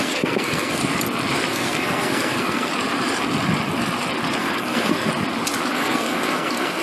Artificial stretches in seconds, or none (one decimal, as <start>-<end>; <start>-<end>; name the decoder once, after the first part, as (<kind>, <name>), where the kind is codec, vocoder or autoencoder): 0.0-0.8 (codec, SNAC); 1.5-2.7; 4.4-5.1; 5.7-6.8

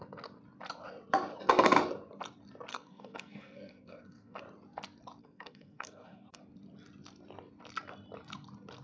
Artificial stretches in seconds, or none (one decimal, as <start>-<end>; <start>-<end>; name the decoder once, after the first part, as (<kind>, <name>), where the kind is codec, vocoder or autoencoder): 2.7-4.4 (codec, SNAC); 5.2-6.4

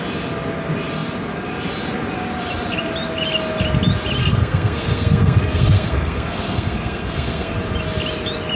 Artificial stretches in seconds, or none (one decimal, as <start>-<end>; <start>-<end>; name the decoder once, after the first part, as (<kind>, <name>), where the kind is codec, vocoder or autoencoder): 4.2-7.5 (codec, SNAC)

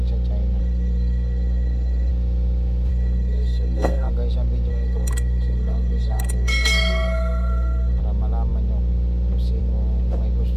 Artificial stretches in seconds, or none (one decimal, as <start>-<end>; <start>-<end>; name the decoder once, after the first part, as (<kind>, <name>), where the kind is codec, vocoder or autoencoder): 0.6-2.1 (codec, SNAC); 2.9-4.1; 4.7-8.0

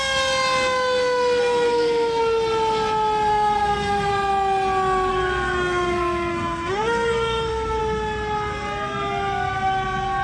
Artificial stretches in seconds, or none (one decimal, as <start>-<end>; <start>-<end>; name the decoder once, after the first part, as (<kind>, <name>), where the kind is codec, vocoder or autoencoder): 1.4-2.2 (codec, SNAC); 3.3-4.1; 5.1-7.8

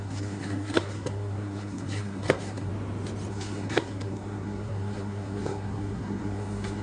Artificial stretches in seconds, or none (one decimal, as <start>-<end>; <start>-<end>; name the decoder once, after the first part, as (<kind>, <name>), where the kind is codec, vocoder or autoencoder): 0.0-2.7 (codec, SNAC); 3.3-6.8